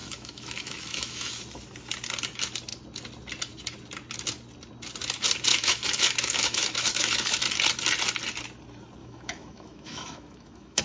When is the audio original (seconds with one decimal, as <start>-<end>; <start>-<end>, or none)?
1.3-5.5; 7.4-9.0